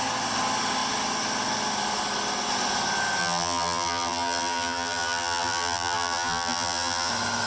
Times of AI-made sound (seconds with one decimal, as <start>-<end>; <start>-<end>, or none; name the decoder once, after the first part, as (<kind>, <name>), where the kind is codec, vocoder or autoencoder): 3.2-7.1 (vocoder, BigVGAN v2)